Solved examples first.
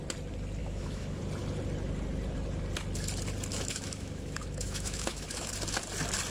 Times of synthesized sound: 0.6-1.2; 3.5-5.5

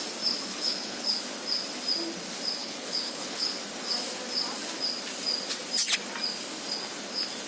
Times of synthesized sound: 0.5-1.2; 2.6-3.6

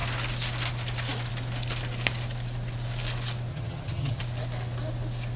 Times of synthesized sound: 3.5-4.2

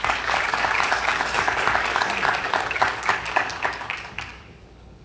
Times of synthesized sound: 0.0-5.0

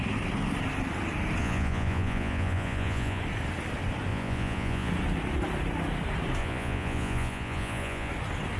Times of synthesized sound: 1.4-3.2; 4.1-4.9; 6.4-8.1

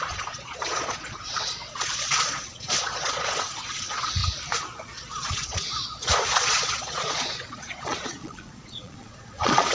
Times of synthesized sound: 0.0-4.2; 4.8-9.7

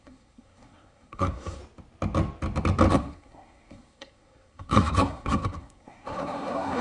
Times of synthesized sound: 0.0-1.6; 2.9-6.8